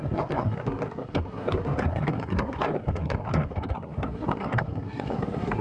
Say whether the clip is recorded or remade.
remade